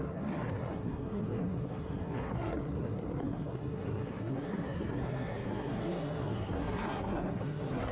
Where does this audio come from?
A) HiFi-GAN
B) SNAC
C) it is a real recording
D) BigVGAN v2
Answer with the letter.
B